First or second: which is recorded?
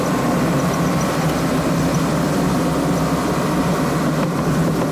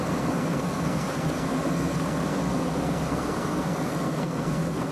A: first